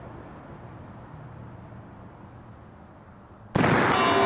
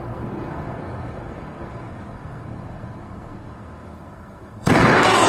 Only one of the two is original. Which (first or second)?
first